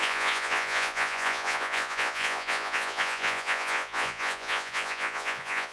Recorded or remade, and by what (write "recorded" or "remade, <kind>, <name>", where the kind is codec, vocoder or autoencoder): remade, vocoder, Vocos